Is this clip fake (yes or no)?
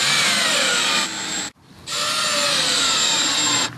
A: no